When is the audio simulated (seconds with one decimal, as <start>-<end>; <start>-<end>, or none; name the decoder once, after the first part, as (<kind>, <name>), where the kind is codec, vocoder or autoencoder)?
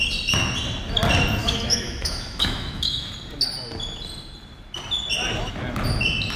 1.4-3.1 (autoencoder, DAC-VAE)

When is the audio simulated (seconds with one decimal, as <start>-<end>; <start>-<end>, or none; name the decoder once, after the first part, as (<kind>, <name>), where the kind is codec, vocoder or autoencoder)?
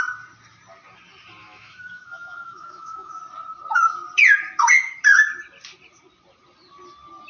1.4-3.2 (autoencoder, DAC-VAE)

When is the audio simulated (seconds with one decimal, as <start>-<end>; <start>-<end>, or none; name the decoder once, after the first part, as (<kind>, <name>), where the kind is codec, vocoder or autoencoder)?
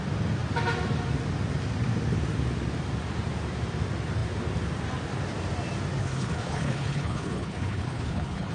6.0-8.5 (codec, HILCodec)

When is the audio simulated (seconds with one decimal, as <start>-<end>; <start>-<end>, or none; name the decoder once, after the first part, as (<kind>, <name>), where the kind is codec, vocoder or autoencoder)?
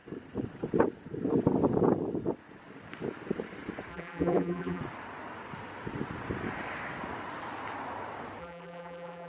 3.9-4.8 (vocoder, BigVGAN v2); 8.4-9.3